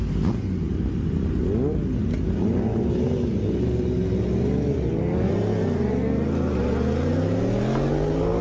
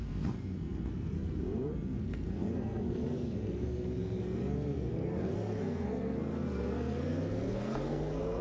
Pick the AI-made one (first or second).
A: second